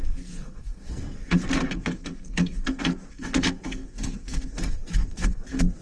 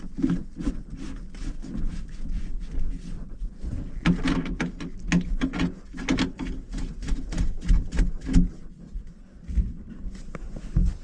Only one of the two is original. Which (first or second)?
second